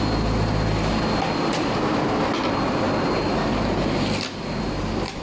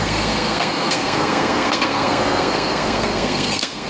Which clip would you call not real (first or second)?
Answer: second